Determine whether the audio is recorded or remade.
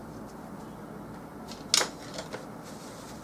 recorded